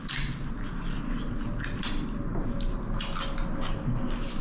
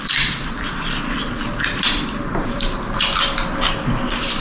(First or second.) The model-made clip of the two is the second